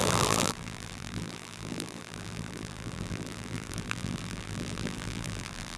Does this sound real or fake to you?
fake